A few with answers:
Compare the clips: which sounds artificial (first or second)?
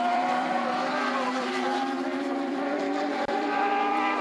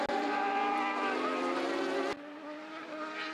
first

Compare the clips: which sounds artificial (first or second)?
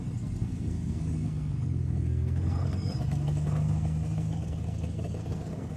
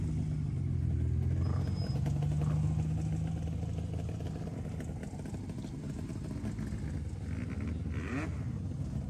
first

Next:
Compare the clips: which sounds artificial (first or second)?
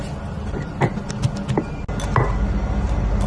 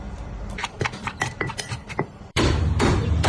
second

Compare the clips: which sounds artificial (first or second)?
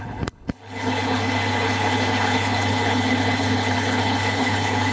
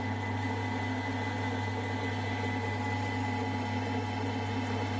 first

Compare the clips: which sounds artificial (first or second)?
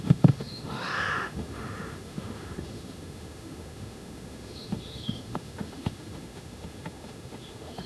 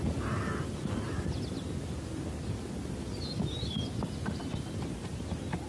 first